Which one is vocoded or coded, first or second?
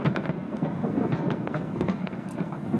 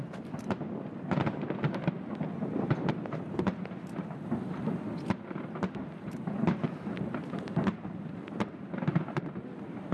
first